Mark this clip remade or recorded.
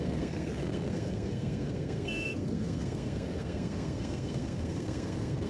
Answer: remade